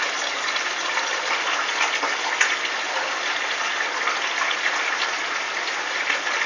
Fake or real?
real